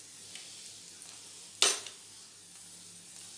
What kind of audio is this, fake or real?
real